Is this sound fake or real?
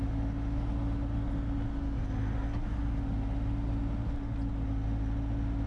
real